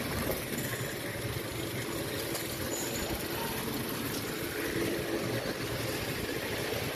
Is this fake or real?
fake